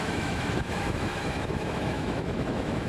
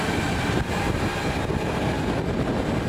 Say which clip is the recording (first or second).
second